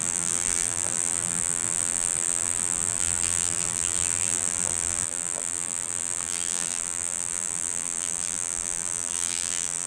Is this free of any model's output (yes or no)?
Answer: no